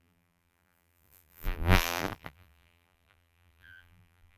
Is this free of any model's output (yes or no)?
no